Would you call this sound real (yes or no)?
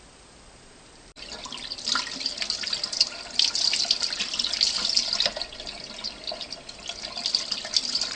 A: yes